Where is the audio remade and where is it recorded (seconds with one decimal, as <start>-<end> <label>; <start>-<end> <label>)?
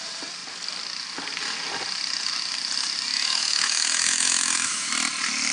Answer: 0.0-3.1 recorded; 3.1-4.9 remade; 4.9-5.5 recorded